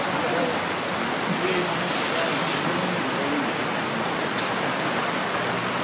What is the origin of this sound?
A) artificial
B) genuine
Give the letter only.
B